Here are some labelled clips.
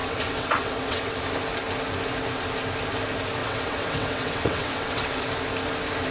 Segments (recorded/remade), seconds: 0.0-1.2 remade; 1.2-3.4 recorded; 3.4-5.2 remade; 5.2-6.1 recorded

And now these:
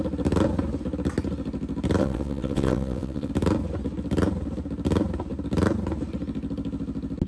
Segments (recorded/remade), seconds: 0.0-2.0 recorded; 2.0-3.3 remade; 3.3-7.3 recorded